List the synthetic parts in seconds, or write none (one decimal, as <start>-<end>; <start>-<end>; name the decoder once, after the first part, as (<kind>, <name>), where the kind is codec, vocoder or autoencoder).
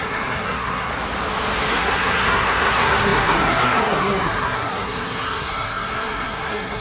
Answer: 0.0-0.9 (codec, SNAC); 1.7-6.8